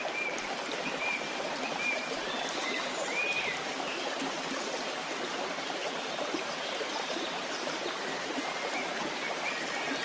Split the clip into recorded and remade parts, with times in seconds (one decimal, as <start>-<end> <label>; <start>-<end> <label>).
0.0-1.7 recorded; 1.7-3.2 remade; 3.2-5.8 recorded; 5.8-9.4 remade; 9.4-10.0 recorded